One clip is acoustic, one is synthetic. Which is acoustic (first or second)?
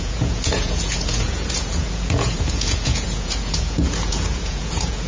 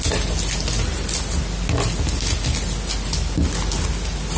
second